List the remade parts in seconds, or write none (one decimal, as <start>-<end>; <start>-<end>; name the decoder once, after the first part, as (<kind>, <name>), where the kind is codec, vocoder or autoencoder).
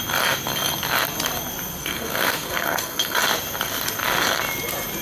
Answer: 1.8-3.2 (codec, SNAC)